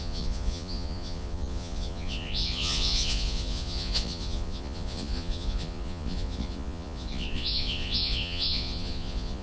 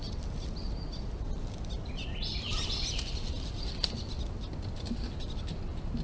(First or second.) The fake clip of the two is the first